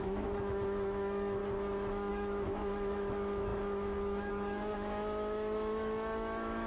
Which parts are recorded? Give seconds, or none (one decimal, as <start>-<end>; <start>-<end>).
1.4-2.1

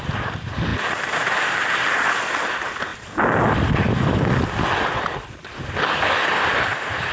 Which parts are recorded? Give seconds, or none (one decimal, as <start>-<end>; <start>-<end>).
0.0-7.1